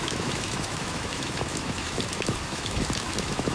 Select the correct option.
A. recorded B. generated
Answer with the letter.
B